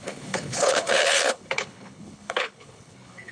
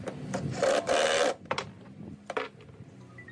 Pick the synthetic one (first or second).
first